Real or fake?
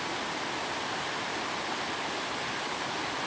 real